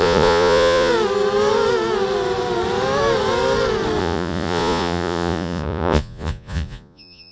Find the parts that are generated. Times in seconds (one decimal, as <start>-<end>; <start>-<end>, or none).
0.0-0.9; 4.0-7.3